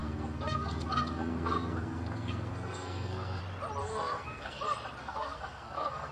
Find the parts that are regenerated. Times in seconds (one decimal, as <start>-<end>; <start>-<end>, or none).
0.0-3.4; 3.8-4.6; 5.0-6.1